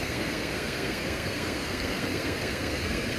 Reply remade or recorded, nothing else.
remade